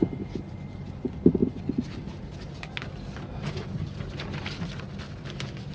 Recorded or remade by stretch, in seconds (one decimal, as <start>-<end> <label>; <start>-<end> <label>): 0.0-5.7 recorded